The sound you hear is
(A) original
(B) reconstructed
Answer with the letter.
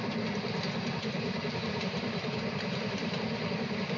A